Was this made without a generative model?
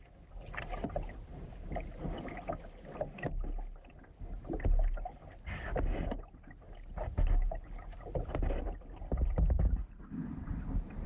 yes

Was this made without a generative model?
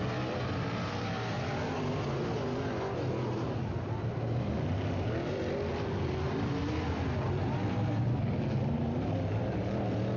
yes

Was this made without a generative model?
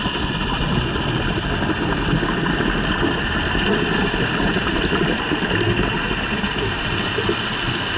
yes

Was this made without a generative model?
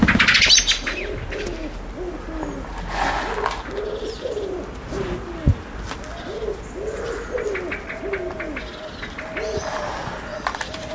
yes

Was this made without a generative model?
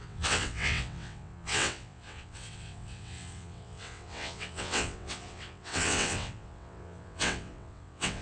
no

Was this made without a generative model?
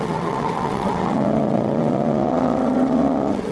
no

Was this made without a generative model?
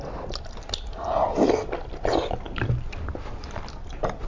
yes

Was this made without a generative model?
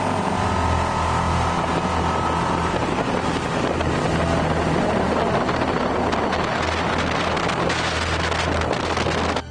yes